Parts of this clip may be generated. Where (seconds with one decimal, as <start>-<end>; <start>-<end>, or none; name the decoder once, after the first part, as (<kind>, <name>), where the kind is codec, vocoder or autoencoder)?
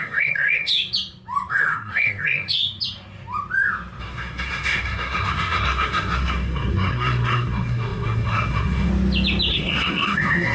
0.0-0.7 (codec, SNAC); 1.5-2.6; 4.0-8.9; 9.5-10.5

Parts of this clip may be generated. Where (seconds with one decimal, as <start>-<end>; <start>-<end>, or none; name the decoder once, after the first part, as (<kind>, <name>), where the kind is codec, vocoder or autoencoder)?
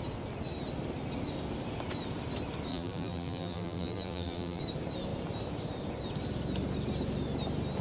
2.7-4.6 (vocoder, BigVGAN v2)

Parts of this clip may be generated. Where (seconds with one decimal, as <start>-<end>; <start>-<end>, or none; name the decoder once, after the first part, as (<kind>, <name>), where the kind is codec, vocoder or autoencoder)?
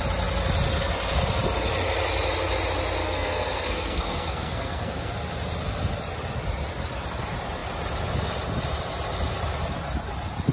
3.0-5.1 (codec, SNAC)